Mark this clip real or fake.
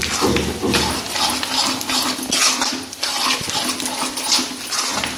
real